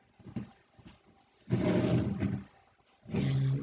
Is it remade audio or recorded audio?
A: recorded